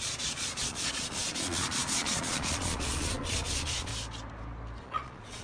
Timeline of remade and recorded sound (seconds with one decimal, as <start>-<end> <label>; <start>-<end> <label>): 0.0-3.9 remade; 3.9-4.8 recorded; 4.8-5.4 remade